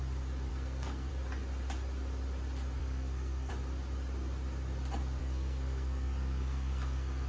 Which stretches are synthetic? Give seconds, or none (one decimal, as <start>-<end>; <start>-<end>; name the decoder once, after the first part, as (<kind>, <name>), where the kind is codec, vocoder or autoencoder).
0.5-1.1 (codec, SNAC); 2.8-3.5; 5.2-7.3